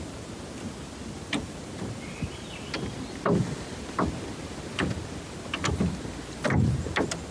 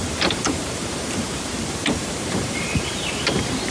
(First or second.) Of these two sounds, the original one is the first